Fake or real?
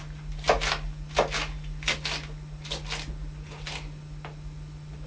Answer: real